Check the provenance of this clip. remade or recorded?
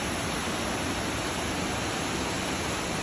recorded